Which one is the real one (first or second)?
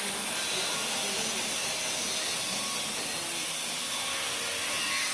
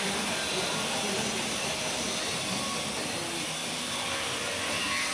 first